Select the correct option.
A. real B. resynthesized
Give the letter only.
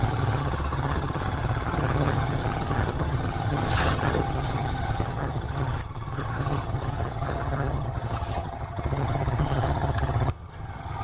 B